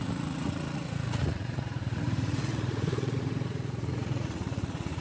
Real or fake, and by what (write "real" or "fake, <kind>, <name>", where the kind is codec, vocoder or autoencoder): fake, vocoder, Vocos